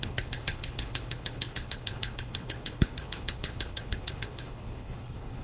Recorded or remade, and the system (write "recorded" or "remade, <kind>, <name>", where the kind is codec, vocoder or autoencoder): remade, codec, HILCodec